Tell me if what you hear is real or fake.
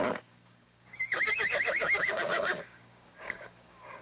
fake